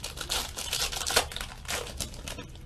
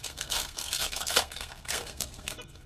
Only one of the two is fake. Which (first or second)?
second